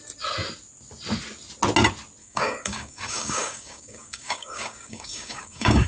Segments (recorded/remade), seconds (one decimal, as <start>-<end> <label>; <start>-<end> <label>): 0.0-2.2 recorded; 2.2-5.9 remade